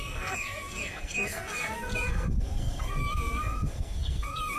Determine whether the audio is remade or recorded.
remade